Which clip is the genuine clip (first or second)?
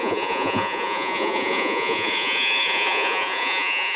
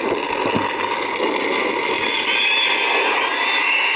second